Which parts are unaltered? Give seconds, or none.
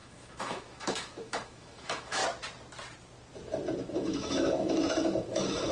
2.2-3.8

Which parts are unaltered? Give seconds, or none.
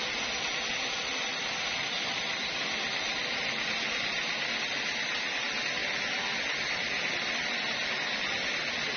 0.0-9.0